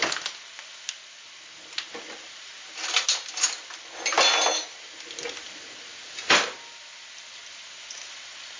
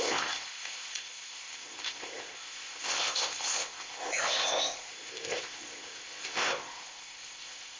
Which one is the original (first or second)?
first